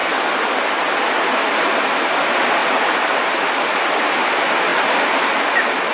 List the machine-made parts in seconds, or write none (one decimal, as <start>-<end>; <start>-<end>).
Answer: none